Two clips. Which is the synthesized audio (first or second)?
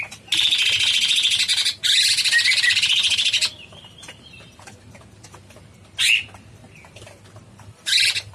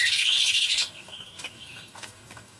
second